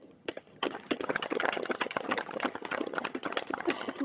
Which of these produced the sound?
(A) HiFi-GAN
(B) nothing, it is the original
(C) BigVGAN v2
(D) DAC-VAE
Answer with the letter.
A